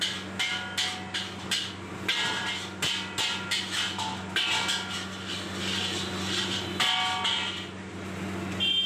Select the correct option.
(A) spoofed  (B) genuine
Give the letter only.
B